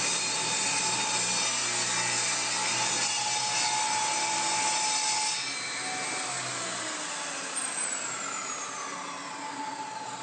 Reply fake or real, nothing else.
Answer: real